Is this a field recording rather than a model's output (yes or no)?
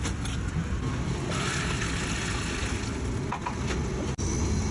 yes